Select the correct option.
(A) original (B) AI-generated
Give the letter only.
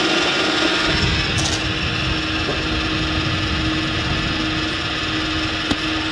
A